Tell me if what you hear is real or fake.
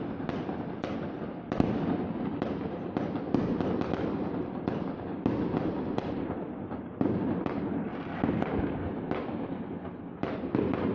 fake